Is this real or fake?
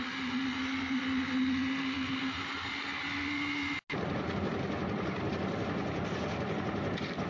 real